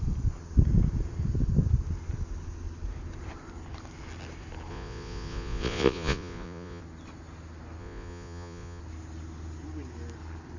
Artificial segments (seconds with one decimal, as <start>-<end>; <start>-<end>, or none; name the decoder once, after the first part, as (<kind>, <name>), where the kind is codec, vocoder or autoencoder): 4.7-6.8 (vocoder, Vocos); 7.8-8.8